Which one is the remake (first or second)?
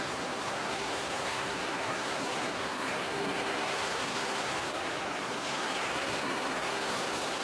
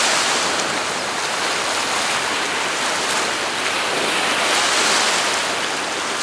first